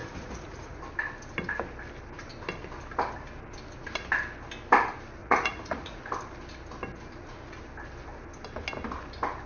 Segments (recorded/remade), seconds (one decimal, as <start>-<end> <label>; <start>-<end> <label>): 0.0-0.8 remade; 0.8-5.2 recorded; 5.2-6.0 remade; 6.0-9.5 recorded